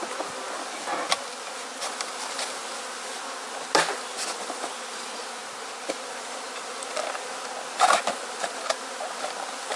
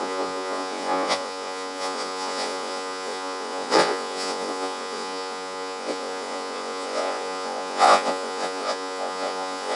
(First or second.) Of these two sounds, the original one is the first